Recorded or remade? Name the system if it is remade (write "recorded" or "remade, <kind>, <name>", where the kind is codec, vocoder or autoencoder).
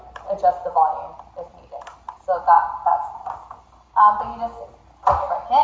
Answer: recorded